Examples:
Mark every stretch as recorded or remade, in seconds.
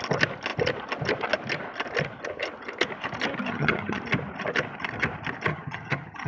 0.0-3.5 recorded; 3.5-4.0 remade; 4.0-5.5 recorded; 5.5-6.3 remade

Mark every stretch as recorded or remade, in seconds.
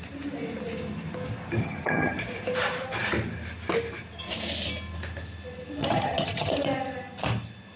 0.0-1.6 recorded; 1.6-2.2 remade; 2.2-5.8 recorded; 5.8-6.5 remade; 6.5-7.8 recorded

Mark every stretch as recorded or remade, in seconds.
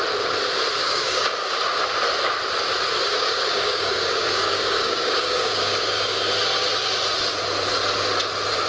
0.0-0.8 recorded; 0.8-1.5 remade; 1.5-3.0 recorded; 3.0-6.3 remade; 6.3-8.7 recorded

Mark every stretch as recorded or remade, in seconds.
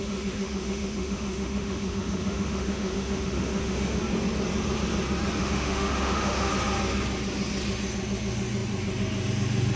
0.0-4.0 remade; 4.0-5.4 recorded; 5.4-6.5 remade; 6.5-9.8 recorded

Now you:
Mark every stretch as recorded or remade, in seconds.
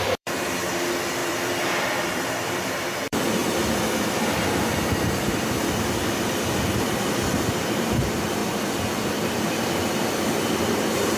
0.0-11.2 remade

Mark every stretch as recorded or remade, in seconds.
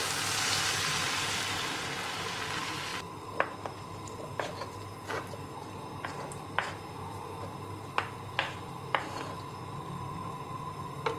0.0-11.2 recorded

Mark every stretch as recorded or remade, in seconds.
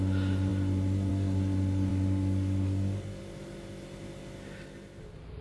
0.0-1.9 recorded; 1.9-3.2 remade; 3.2-5.4 recorded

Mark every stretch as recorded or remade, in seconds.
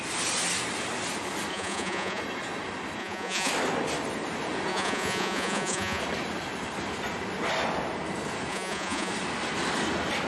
0.0-1.5 recorded; 1.5-2.2 remade; 2.2-3.0 recorded; 3.0-3.5 remade; 3.5-4.7 recorded; 4.7-6.0 remade; 6.0-8.5 recorded; 8.5-9.1 remade; 9.1-10.3 recorded